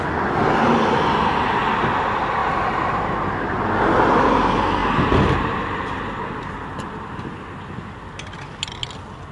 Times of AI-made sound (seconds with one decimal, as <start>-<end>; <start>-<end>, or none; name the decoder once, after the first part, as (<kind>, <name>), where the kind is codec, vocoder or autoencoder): 2.4-3.3 (vocoder, BigVGAN v2); 4.8-7.9